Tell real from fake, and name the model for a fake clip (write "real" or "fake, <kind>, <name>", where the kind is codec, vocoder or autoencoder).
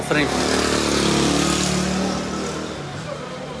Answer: real